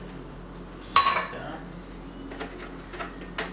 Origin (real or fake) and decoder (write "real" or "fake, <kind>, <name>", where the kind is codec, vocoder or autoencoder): real